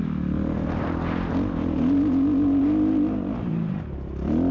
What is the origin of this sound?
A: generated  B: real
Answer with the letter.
A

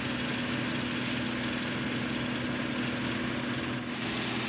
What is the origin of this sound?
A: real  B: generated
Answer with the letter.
A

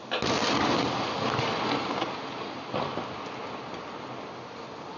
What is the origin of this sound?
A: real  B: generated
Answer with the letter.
A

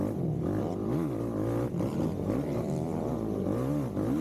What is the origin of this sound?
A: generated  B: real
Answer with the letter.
B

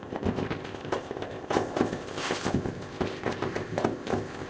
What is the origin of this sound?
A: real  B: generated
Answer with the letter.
B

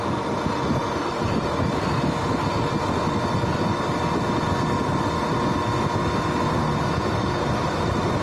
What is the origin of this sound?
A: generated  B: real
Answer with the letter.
B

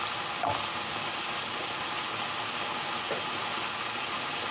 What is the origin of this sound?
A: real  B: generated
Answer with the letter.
A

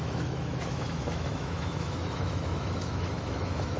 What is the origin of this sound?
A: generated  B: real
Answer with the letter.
A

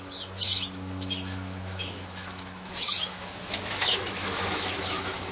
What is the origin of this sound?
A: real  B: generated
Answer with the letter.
B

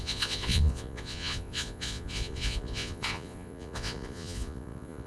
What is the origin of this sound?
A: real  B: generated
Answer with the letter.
B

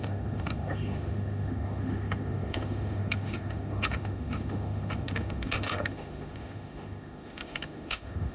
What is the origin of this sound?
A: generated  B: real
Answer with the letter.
A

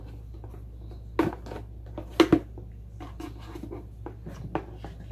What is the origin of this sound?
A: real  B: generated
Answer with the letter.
A